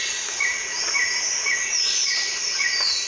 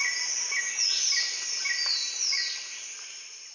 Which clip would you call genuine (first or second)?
second